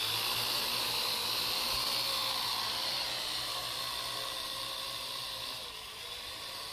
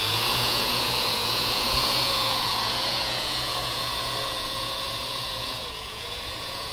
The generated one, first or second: second